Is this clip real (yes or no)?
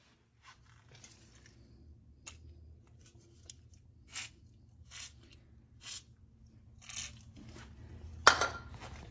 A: yes